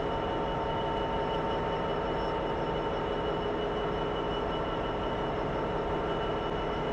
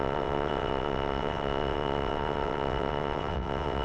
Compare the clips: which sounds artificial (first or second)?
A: second